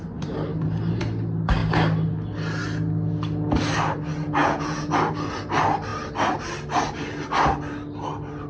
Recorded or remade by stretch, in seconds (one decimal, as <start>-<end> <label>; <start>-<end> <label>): 0.0-4.4 recorded; 4.4-4.9 remade; 4.9-8.5 recorded